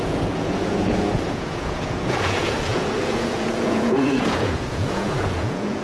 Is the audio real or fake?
fake